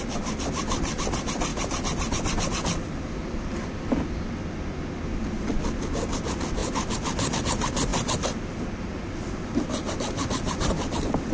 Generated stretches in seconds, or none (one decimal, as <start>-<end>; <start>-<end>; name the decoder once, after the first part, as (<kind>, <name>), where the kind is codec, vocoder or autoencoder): none